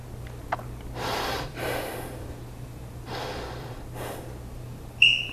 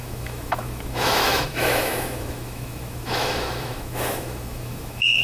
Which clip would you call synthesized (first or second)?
second